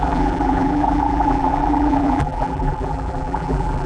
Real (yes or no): no